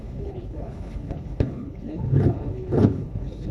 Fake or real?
fake